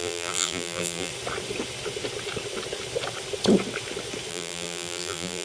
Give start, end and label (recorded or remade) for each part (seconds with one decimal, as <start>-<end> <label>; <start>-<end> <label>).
0.0-1.1 remade; 1.1-4.3 recorded; 4.3-5.4 remade